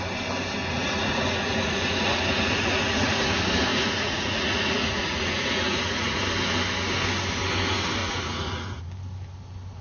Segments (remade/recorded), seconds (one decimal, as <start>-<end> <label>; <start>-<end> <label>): 0.0-0.6 recorded; 0.6-3.3 remade; 3.3-3.7 recorded; 3.7-6.2 remade; 6.2-8.0 recorded; 8.0-8.9 remade; 8.9-9.8 recorded